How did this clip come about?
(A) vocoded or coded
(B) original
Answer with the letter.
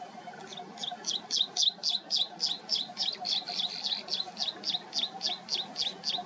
B